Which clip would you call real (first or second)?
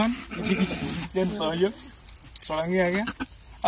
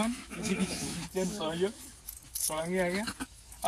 first